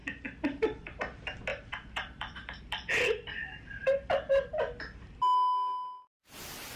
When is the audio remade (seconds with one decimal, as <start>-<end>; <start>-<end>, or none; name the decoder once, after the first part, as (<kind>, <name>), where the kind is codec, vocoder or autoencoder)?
1.5-2.6 (vocoder, BigVGAN v2)

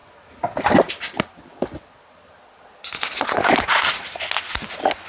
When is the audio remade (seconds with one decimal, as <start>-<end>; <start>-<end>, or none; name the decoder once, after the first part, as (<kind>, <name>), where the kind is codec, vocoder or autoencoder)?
none

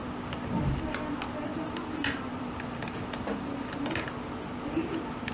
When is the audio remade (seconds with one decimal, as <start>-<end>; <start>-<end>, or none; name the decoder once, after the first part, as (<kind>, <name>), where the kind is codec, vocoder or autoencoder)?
1.5-4.2 (vocoder, BigVGAN v2)

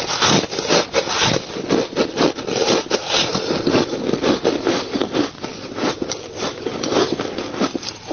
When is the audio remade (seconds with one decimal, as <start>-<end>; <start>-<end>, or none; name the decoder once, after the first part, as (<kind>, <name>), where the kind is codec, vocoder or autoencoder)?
5.0-6.1 (vocoder, BigVGAN v2)

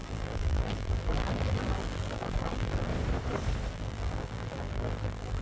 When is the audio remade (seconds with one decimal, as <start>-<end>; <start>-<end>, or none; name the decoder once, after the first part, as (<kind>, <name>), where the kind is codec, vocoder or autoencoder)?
0.0-2.9 (vocoder, BigVGAN v2); 3.7-5.4

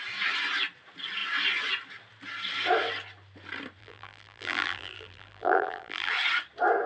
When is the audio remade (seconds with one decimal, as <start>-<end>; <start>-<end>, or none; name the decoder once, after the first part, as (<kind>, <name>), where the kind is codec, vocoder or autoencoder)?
3.8-6.1 (vocoder, BigVGAN v2)

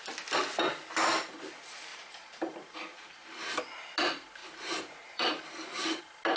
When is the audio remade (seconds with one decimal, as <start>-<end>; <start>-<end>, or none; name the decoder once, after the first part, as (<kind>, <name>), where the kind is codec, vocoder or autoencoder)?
1.9-3.6 (vocoder, BigVGAN v2); 4.4-6.0

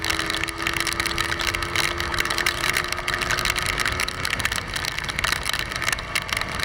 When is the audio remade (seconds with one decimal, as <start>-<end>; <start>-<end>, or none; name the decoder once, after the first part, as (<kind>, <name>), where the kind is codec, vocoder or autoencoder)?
2.1-2.8 (vocoder, BigVGAN v2)